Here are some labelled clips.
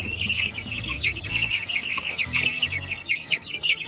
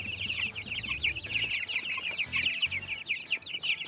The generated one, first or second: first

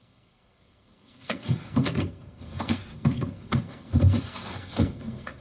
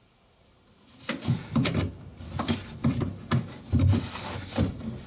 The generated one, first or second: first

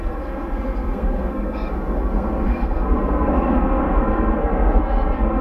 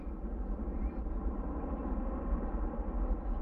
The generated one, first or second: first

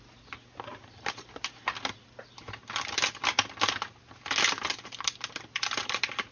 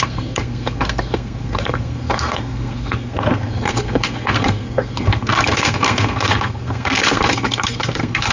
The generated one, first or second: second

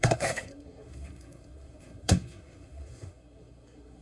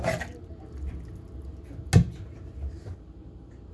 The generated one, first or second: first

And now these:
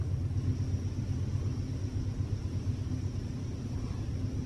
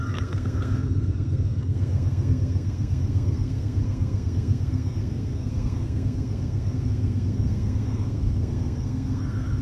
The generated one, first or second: second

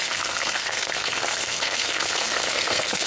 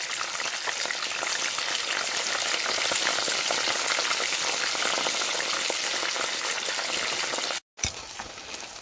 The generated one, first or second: first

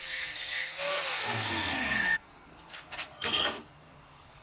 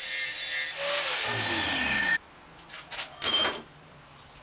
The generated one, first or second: first